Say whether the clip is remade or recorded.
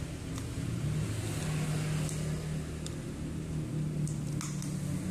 recorded